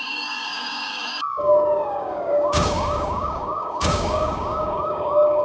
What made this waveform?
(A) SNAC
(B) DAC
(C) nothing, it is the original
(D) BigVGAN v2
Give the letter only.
B